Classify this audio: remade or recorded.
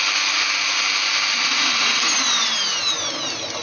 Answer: recorded